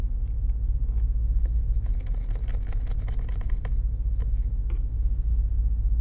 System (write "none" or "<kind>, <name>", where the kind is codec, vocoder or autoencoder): none